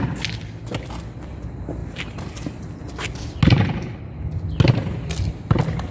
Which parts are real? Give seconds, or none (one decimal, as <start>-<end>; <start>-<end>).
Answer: 0.0-5.9

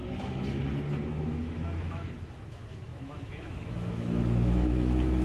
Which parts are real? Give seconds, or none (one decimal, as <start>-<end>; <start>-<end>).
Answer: 0.0-1.1

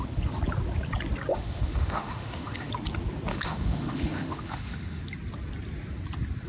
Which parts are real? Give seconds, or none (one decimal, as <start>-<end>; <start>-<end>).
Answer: 0.0-1.3; 2.7-3.3; 5.0-6.5